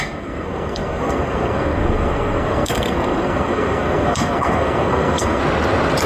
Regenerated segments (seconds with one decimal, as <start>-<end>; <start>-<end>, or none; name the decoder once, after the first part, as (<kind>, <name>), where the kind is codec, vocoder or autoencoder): 0.0-5.4 (codec, SNAC)